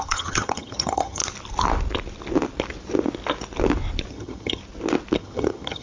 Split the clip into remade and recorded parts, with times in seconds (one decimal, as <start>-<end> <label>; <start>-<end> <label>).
0.0-1.2 remade; 1.2-4.1 recorded; 4.1-4.6 remade; 4.6-5.2 recorded; 5.2-5.8 remade